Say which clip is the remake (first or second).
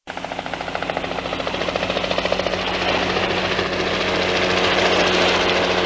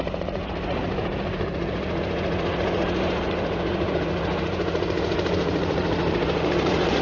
second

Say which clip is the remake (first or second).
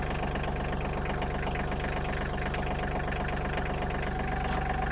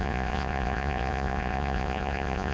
second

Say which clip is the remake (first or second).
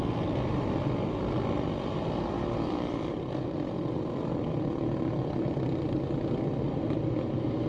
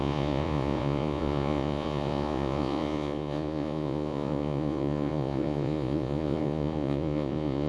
second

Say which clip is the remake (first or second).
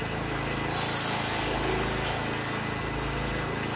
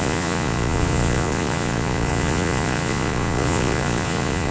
second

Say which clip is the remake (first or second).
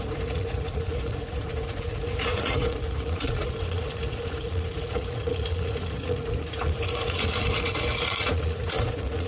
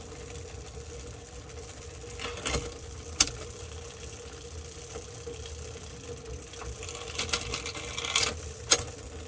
first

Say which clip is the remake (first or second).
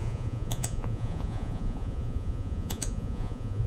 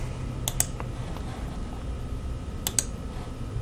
first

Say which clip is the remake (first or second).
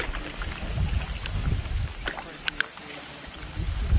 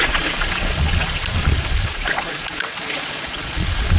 second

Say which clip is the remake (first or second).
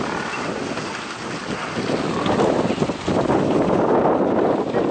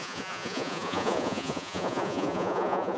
second